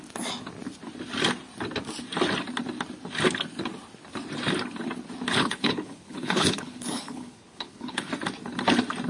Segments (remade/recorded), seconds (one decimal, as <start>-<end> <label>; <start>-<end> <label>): 0.0-5.3 recorded; 5.3-8.1 remade; 8.1-9.1 recorded